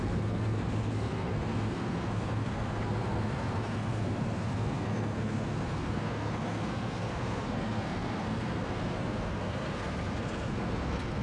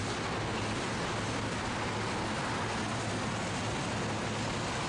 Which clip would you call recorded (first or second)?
second